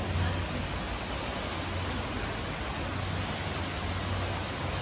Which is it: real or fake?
real